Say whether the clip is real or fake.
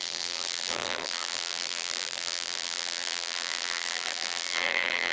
fake